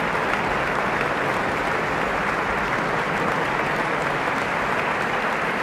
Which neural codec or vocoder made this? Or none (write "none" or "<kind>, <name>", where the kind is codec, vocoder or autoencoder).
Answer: none